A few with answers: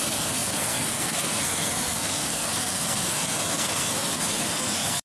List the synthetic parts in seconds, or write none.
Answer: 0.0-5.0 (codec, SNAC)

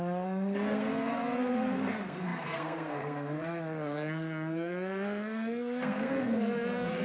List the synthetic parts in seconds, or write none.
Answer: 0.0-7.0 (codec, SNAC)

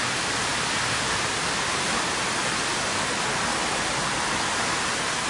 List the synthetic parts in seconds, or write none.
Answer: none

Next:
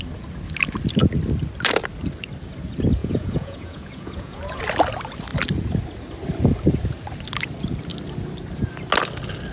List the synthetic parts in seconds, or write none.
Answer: 3.0-4.6 (vocoder, Vocos)

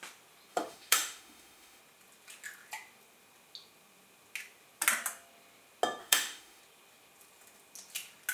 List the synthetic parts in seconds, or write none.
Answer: 0.5-1.8 (autoencoder, DAC-VAE); 6.0-6.6

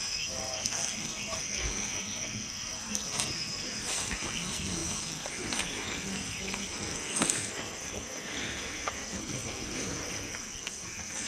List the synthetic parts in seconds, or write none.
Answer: 0.0-11.3 (codec, SNAC)

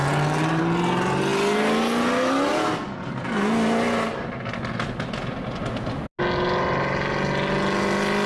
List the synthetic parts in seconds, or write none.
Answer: none